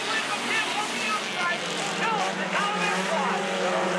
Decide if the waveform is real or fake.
real